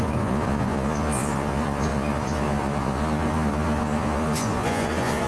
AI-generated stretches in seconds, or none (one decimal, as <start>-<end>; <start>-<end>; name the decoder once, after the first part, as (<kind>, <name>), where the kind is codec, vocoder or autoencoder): 0.0-5.3 (vocoder, Vocos)